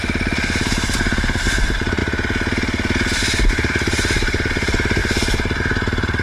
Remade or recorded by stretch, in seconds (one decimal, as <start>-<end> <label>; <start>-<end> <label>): 0.0-2.0 remade; 2.0-3.5 recorded; 3.5-6.2 remade